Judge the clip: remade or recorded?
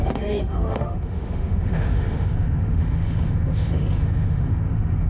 remade